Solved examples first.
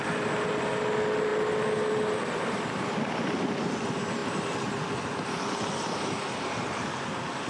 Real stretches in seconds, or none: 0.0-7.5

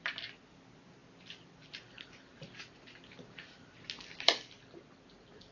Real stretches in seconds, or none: 0.0-5.5